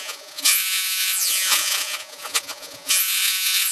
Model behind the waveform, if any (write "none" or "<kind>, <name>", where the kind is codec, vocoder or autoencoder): vocoder, Vocos